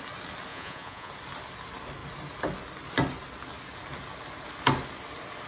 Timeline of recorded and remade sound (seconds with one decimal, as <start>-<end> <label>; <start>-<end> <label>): 0.0-0.5 recorded; 0.5-1.1 remade; 1.1-5.5 recorded